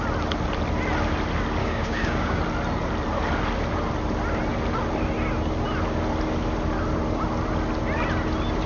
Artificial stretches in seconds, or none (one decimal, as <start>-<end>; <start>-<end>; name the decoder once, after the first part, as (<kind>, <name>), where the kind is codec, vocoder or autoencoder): 1.6-2.4 (codec, DAC)

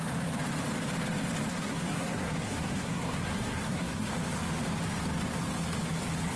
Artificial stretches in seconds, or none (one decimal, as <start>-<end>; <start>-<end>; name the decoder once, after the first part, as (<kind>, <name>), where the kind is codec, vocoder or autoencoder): 1.5-4.1 (codec, SNAC)

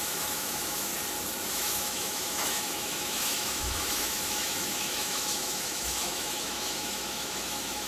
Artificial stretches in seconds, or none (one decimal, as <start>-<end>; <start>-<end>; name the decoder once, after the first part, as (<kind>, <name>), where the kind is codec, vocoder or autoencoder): 0.0-0.9 (autoencoder, DAC-VAE); 1.5-7.9

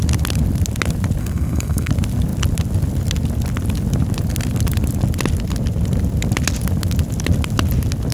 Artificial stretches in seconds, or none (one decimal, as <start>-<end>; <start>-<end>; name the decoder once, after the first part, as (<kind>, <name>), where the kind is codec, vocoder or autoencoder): 1.2-1.9 (codec, SNAC)